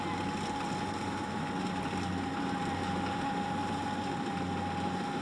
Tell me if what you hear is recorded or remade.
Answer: recorded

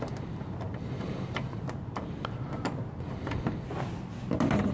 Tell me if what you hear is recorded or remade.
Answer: recorded